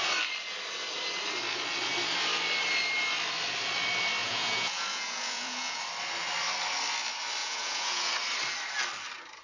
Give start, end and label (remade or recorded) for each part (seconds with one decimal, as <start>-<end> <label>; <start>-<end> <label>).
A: 0.0-4.2 recorded; 4.2-5.8 remade; 5.8-7.4 recorded; 7.4-8.1 remade; 8.1-9.4 recorded